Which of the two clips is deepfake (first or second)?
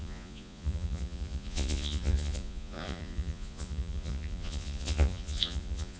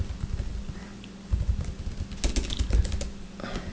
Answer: first